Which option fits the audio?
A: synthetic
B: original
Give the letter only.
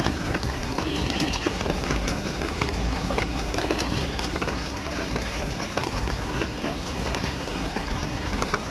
A